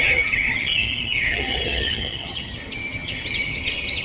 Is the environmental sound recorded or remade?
remade